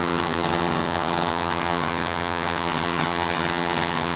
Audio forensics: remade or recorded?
remade